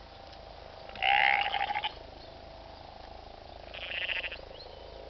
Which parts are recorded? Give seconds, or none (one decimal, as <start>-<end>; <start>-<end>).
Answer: 0.0-5.1